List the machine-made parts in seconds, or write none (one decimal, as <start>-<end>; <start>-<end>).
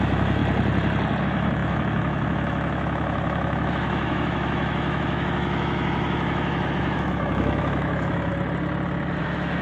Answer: 0.0-0.4; 1.2-8.3; 9.2-9.6